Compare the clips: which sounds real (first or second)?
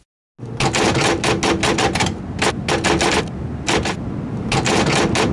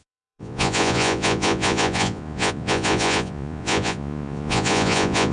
first